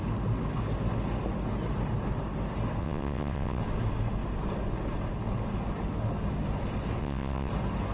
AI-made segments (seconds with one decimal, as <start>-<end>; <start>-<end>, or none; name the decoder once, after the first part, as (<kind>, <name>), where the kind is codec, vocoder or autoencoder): 2.8-3.6 (vocoder, WaveNeXt); 7.0-7.5